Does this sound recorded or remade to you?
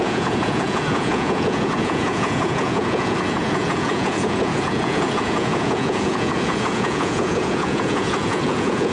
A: remade